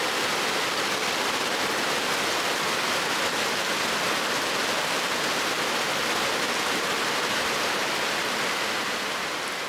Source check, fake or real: real